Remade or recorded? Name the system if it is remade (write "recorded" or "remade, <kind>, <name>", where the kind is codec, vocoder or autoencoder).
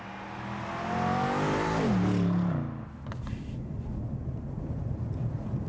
recorded